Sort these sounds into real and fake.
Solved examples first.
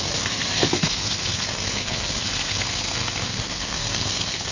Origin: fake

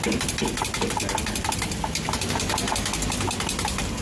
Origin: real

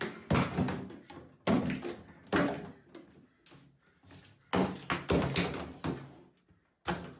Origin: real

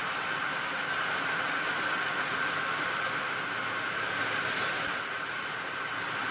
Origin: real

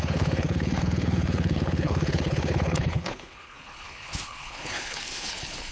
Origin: fake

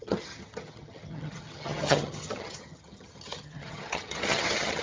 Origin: fake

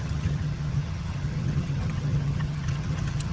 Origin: fake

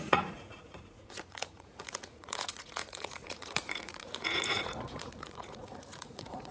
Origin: fake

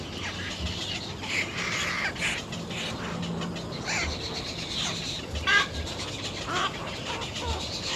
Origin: real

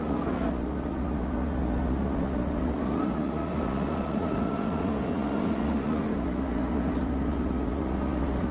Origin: fake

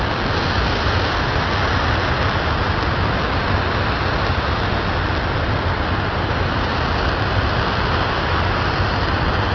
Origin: real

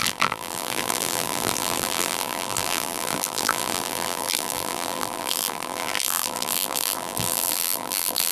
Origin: fake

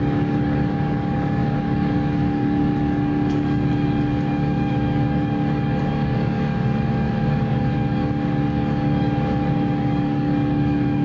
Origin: fake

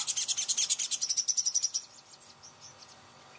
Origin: real